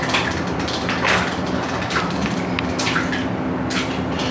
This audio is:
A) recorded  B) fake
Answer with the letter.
A